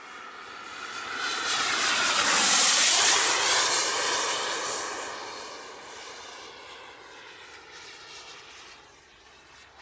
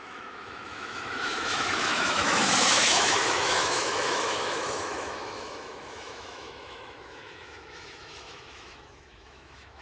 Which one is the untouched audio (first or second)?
first